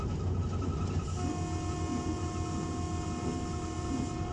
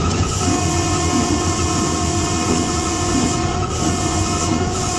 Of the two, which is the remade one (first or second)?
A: second